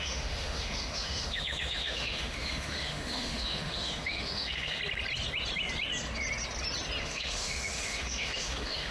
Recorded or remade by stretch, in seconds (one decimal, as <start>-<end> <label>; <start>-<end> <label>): 0.0-4.8 remade; 4.8-7.0 recorded; 7.0-8.9 remade